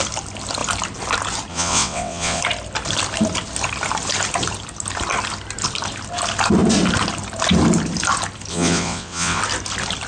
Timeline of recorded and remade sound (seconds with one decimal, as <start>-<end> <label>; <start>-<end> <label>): 0.0-1.5 recorded; 1.5-2.4 remade; 2.4-8.5 recorded; 8.5-9.4 remade; 9.4-10.1 recorded